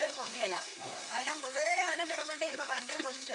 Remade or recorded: remade